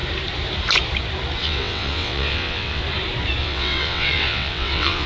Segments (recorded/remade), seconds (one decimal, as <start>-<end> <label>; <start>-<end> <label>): 0.0-1.4 recorded; 1.4-2.8 remade; 2.8-3.4 recorded; 3.4-5.1 remade